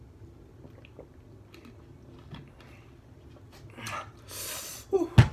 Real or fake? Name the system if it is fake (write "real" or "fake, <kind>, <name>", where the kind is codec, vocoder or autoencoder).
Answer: real